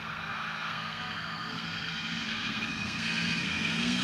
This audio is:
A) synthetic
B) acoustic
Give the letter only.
A